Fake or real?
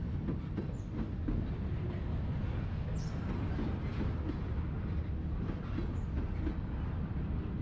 real